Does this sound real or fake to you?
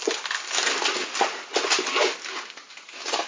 real